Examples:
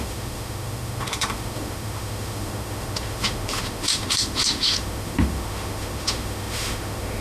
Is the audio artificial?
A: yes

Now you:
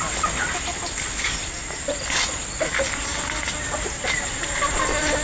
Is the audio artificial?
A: no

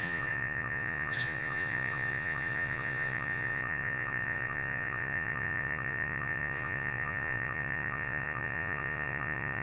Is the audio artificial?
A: yes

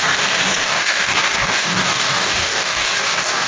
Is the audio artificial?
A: yes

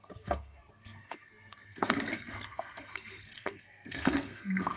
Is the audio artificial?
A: yes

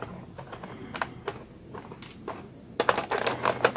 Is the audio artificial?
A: no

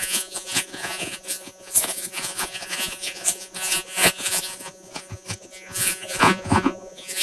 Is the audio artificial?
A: yes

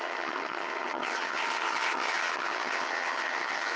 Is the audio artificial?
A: yes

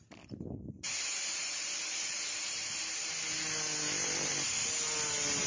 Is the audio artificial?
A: no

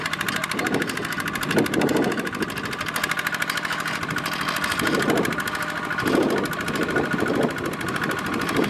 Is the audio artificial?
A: no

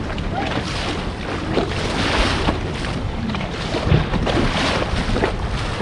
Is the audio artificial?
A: no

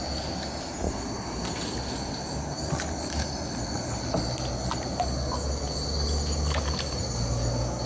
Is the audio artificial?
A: no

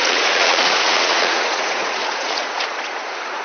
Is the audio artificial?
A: yes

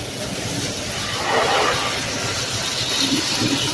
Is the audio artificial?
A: no